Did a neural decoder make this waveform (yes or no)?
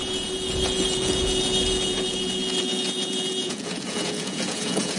yes